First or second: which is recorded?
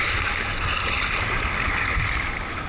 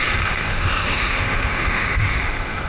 first